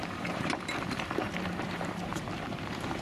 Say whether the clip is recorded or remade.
remade